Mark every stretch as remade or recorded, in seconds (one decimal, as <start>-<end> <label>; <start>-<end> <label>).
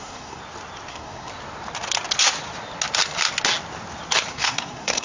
0.0-0.4 remade; 0.4-0.9 recorded; 0.9-1.3 remade; 1.3-4.3 recorded; 4.3-5.0 remade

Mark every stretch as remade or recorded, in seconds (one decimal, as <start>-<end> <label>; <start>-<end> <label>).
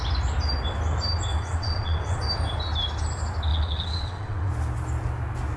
0.0-1.3 recorded; 1.3-2.2 remade; 2.2-3.5 recorded; 3.5-4.5 remade; 4.5-5.6 recorded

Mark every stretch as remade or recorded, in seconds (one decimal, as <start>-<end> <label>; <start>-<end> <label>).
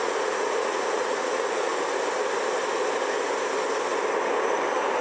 0.0-1.7 remade; 1.7-5.0 recorded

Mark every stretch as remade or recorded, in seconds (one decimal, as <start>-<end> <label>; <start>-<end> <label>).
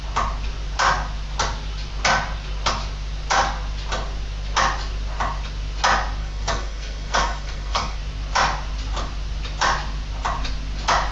0.0-6.2 recorded; 6.2-8.0 remade; 8.0-11.1 recorded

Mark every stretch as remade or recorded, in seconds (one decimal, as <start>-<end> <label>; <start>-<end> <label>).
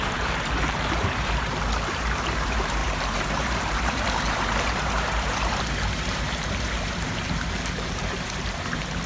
0.0-9.1 remade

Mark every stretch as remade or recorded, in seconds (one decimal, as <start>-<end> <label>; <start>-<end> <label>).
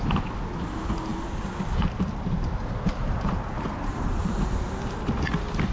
0.0-5.7 recorded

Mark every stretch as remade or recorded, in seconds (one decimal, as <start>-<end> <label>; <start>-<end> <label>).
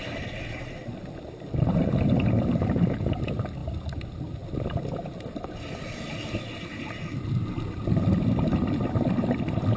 0.0-9.8 recorded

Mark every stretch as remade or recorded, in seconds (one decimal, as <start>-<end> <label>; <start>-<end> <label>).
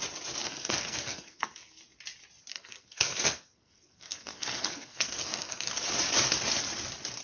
0.0-0.4 recorded; 0.4-1.8 remade; 1.8-2.5 recorded; 2.5-5.7 remade; 5.7-7.2 recorded